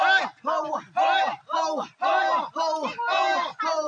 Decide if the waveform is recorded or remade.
recorded